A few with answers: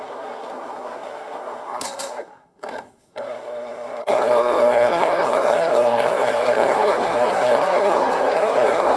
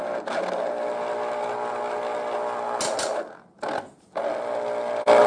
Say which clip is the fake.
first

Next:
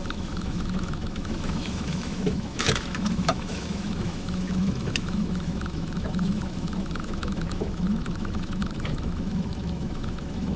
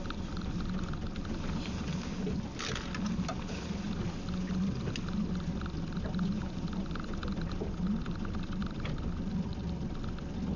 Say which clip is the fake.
first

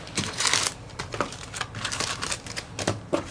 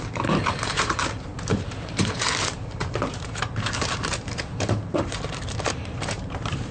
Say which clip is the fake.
second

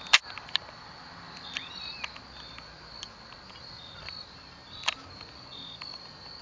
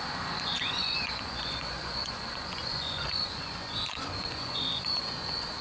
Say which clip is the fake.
second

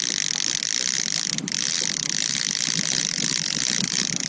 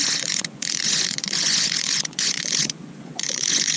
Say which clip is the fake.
second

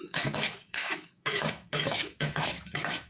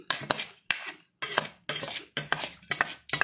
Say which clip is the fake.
first